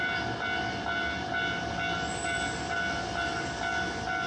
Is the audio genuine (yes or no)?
yes